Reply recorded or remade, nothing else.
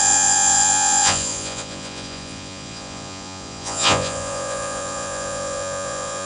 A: remade